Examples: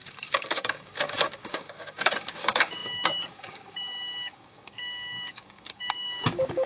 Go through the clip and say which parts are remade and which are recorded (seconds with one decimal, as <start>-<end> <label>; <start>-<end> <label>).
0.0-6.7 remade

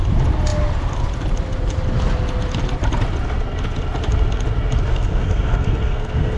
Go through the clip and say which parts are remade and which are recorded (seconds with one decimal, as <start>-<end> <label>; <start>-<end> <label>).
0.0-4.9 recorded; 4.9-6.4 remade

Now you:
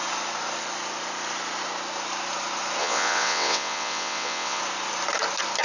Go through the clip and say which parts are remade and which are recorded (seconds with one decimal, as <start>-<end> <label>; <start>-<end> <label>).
0.0-2.8 recorded; 2.8-4.6 remade; 4.6-5.6 recorded

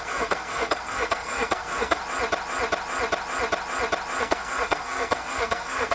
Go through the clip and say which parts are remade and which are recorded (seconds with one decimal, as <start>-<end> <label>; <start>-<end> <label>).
0.0-2.0 remade; 2.0-4.2 recorded; 4.2-5.9 remade

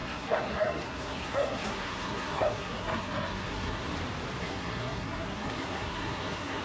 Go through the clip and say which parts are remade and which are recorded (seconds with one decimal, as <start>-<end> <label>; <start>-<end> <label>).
0.0-3.9 remade; 3.9-4.4 recorded; 4.4-6.6 remade

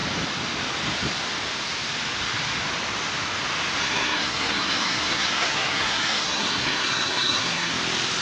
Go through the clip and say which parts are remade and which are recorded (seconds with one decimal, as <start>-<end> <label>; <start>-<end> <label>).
0.0-3.8 recorded; 3.8-7.7 remade; 7.7-8.2 recorded

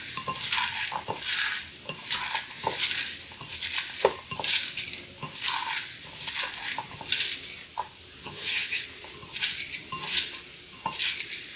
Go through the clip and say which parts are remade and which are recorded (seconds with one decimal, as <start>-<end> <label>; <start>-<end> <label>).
0.0-8.2 recorded; 8.2-8.8 remade; 8.8-11.6 recorded